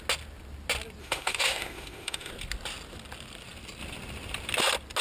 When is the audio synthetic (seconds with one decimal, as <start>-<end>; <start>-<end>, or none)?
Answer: 1.0-2.3